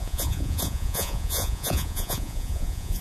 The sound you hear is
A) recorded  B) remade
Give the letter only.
B